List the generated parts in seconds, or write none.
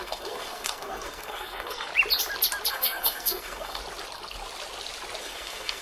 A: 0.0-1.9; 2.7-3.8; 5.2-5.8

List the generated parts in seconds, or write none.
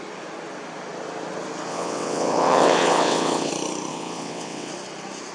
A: 1.7-3.5; 3.9-4.7